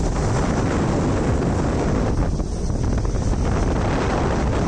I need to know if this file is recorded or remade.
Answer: recorded